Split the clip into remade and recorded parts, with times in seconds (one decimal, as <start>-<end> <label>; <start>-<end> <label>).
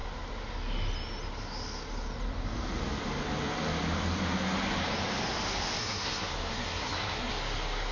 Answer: 0.0-5.8 recorded; 5.8-7.3 remade; 7.3-7.9 recorded